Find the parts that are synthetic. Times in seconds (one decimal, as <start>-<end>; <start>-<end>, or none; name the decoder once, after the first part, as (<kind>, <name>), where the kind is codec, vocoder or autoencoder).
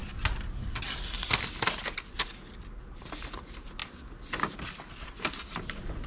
none